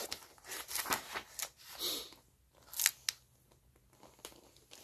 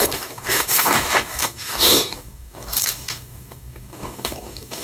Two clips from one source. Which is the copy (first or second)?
second